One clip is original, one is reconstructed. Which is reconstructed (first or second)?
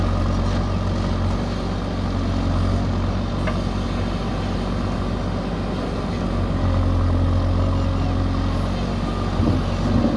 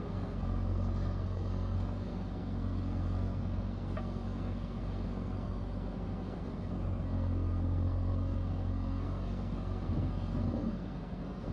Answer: second